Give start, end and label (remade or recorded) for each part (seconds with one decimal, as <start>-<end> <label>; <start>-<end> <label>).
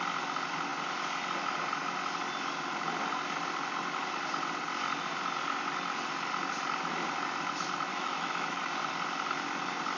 0.0-7.9 recorded; 7.9-8.7 remade; 8.7-10.0 recorded